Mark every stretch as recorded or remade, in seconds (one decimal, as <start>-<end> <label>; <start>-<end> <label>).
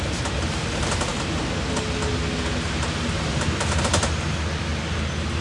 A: 0.0-5.4 recorded